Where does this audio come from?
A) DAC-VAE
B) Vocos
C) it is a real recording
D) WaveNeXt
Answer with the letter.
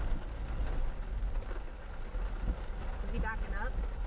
C